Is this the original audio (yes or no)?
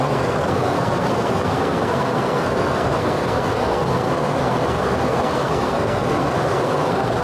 no